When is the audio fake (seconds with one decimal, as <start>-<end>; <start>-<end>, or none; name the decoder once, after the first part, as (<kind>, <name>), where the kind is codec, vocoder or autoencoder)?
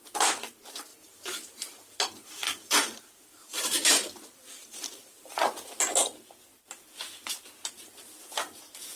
0.9-5.7 (vocoder, BigVGAN v2)